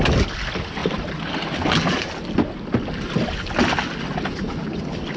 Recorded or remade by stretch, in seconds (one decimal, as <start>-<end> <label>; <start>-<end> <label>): 0.0-5.2 recorded